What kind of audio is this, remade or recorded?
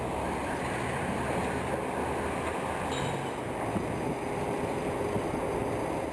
recorded